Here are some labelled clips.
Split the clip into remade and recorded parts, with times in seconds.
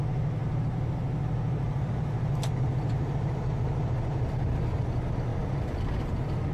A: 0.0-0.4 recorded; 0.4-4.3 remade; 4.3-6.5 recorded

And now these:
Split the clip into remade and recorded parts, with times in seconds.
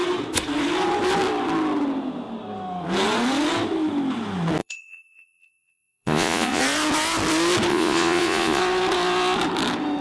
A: 0.0-4.6 recorded; 4.6-6.6 remade; 6.6-7.7 recorded; 7.7-8.6 remade; 8.6-10.0 recorded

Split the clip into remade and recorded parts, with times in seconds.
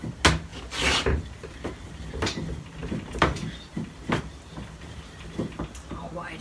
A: 0.0-6.4 recorded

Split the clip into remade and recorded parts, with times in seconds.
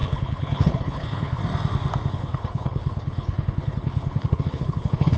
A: 0.0-1.4 remade; 1.4-2.1 recorded; 2.1-5.2 remade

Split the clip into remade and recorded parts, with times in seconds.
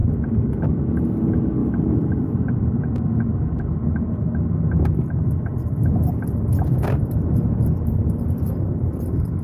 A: 0.0-0.9 remade; 0.9-1.6 recorded; 1.6-2.8 remade; 2.8-9.4 recorded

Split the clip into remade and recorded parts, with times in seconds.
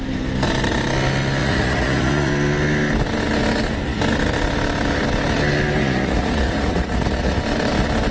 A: 0.0-1.4 recorded; 1.4-2.3 remade; 2.3-5.8 recorded; 5.8-7.4 remade; 7.4-8.1 recorded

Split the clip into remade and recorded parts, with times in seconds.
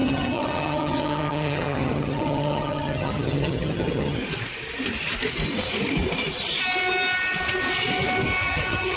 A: 0.0-4.2 remade; 4.2-8.4 recorded; 8.4-9.0 remade